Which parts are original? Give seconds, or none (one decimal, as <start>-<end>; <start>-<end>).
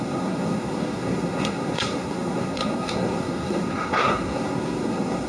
none